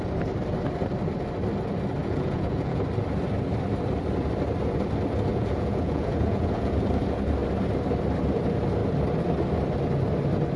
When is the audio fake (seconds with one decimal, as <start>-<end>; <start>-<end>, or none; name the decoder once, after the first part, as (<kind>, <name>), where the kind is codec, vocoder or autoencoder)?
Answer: 2.0-2.8 (vocoder, Vocos); 5.3-6.7